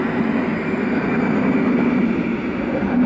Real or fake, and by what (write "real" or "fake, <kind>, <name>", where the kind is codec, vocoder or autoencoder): real